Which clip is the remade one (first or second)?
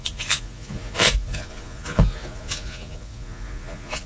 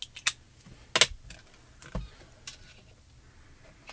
first